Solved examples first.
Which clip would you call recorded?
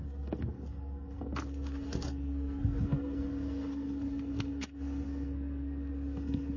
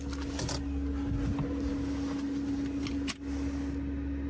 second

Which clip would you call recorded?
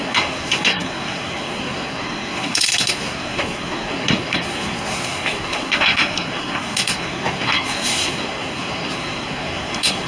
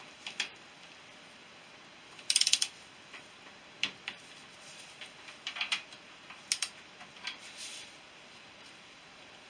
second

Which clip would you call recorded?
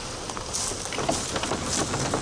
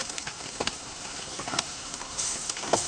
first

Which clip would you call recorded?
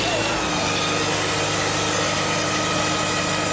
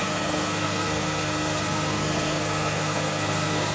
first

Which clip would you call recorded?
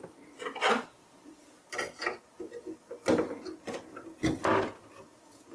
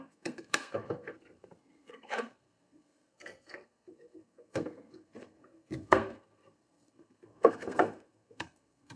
first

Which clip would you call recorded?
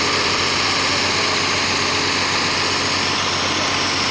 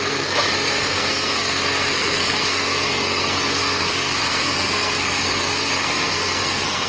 first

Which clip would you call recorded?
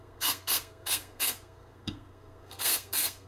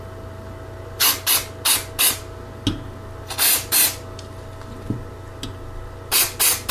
second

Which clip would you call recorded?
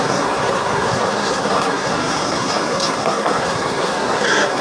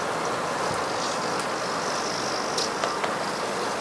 second